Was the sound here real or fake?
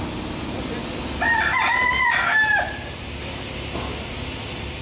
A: real